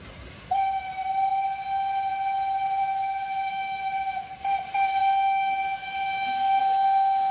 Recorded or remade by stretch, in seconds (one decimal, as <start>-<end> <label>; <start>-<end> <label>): 0.0-2.8 recorded; 2.8-4.3 remade; 4.3-5.0 recorded; 5.0-6.6 remade; 6.6-7.3 recorded